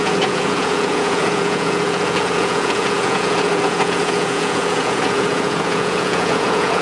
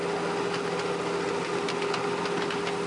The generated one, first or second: first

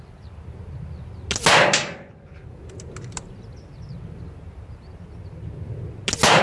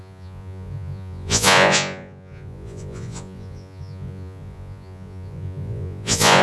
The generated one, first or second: second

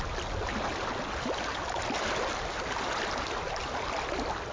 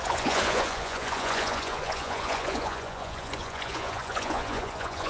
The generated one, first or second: second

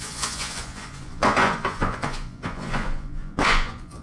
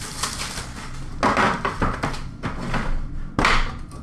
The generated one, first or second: first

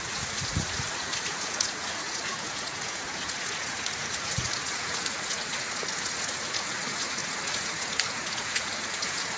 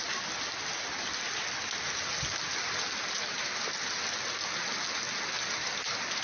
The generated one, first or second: first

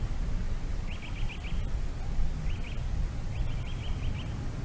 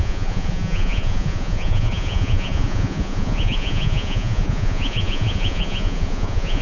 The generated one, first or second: second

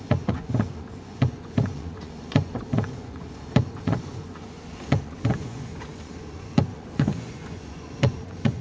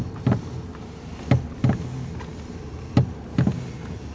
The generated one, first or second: first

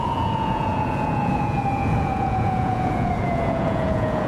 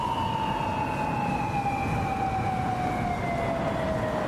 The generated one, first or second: first